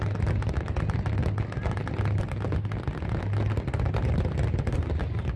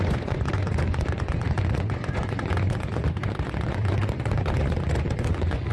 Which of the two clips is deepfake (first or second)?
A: second